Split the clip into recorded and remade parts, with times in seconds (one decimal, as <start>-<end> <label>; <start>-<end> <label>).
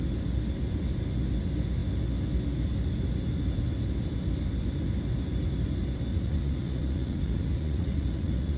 0.0-6.1 recorded; 6.1-8.6 remade